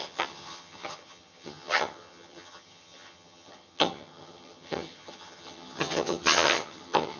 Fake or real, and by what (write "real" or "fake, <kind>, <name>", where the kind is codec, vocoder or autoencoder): fake, vocoder, HiFi-GAN